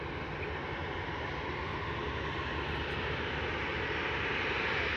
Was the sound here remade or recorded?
recorded